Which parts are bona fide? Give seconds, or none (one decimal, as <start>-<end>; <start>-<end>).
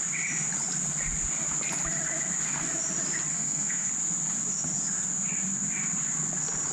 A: 0.0-3.3; 3.9-6.7